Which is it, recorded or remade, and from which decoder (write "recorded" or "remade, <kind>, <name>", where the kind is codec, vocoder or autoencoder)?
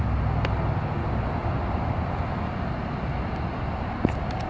recorded